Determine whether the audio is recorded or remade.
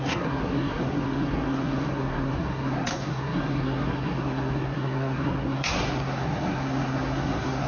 remade